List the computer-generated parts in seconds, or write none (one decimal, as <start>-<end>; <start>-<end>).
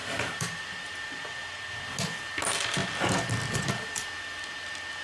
0.0-0.6